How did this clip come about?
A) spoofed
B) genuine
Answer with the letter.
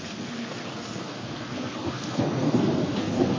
A